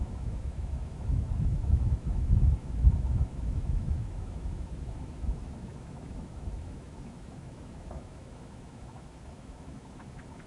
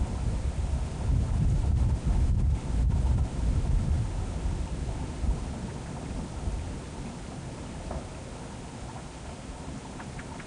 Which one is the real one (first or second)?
second